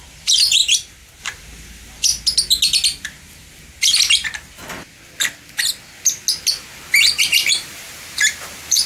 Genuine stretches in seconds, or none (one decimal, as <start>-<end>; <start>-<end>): 0.6-1.2; 2.1-7.2

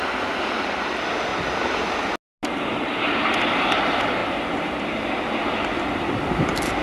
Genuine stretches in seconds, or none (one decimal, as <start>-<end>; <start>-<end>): 0.0-1.3; 2.0-4.2; 4.9-6.8

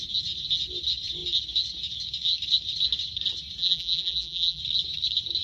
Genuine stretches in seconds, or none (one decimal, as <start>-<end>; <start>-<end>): 0.0-3.6; 4.6-5.4

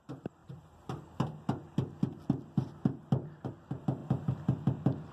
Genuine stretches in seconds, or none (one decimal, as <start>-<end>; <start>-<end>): 0.0-5.1

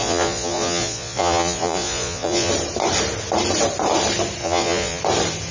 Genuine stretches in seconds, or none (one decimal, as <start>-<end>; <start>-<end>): 2.5-4.4; 5.0-5.5

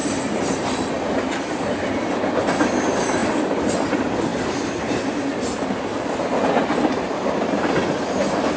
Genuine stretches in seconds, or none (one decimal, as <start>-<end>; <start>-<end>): 4.3-7.6

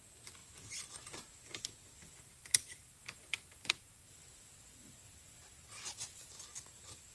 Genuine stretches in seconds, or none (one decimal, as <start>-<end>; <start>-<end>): 0.0-2.0; 6.3-7.1